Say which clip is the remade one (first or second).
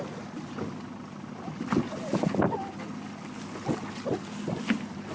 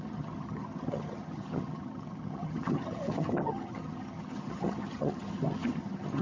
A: second